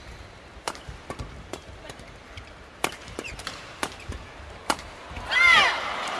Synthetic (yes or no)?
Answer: yes